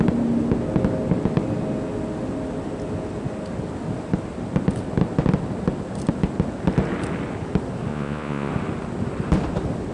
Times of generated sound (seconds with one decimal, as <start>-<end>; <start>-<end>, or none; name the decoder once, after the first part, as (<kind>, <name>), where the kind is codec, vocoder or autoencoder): 7.9-8.5 (vocoder, Vocos)